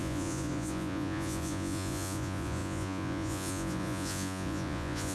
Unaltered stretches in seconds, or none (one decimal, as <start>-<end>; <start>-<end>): none